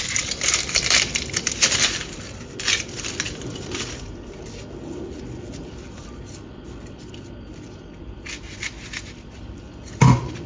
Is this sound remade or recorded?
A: remade